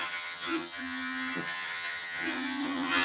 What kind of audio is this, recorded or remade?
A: remade